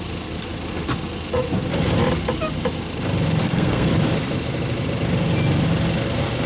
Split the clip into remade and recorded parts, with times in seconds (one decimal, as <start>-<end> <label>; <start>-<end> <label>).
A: 0.0-3.4 recorded; 3.4-3.9 remade; 3.9-6.5 recorded